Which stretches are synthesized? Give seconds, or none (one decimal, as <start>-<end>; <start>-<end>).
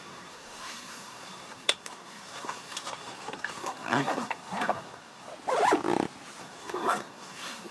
0.0-5.3; 6.4-7.7